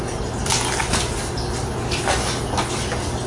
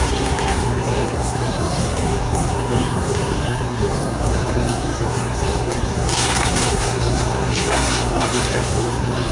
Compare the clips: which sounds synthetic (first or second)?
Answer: second